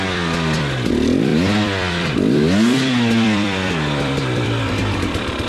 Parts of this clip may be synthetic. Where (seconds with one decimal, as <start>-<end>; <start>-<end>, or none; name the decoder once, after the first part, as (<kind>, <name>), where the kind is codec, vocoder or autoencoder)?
0.0-5.5 (vocoder, BigVGAN v2)